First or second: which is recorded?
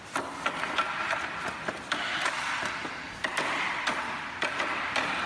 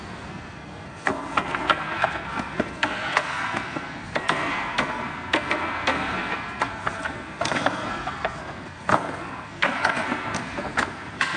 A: first